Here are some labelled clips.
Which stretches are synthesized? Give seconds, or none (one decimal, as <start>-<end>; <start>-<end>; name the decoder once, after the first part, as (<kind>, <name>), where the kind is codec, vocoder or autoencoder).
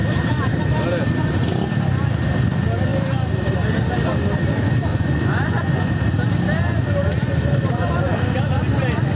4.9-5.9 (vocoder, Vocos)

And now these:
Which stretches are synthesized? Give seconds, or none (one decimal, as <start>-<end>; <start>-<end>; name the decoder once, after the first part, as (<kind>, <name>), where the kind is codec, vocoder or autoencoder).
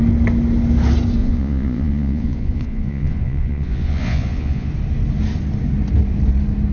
1.2-4.7 (vocoder, Vocos)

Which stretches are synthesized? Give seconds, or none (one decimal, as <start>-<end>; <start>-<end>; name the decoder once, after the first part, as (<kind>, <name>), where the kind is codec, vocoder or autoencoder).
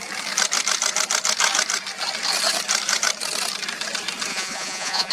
4.3-5.1 (vocoder, Vocos)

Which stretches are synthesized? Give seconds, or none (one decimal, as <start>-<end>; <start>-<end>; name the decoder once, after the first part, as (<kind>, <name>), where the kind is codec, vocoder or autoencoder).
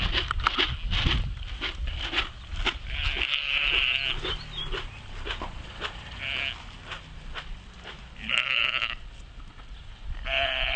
none